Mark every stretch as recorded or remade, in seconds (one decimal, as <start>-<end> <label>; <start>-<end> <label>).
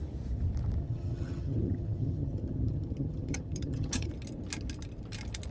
0.0-0.8 recorded; 0.8-4.1 remade; 4.1-5.5 recorded